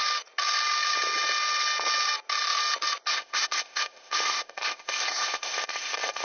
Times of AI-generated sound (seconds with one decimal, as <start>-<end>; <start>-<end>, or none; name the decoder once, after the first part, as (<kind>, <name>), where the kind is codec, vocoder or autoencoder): 3.1-6.2 (codec, ZipCodec)